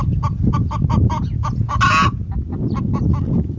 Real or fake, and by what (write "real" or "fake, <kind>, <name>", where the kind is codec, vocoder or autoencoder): real